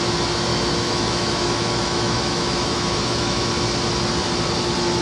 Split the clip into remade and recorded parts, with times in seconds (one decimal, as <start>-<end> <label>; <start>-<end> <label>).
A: 0.0-0.5 recorded; 0.5-3.5 remade; 3.5-5.0 recorded